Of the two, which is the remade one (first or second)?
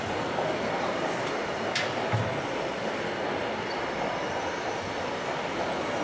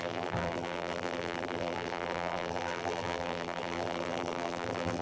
second